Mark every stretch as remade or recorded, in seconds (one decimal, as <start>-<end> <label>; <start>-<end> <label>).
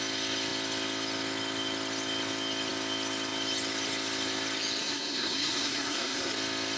0.0-4.8 recorded; 4.8-6.3 remade; 6.3-6.8 recorded